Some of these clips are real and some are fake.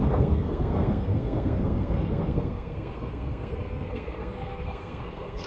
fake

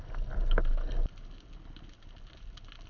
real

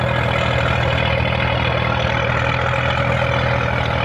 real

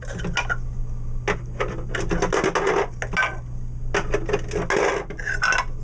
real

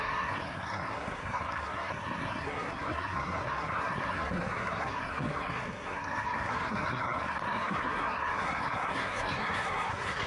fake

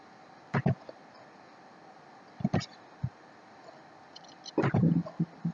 real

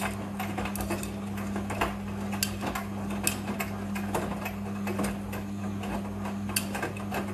real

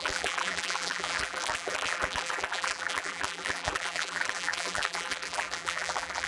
fake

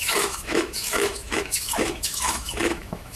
fake